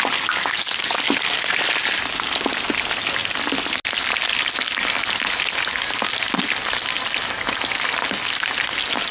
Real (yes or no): yes